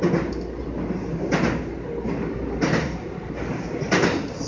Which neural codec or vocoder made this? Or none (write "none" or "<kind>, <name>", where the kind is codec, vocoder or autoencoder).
none